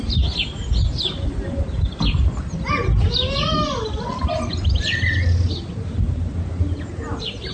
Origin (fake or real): real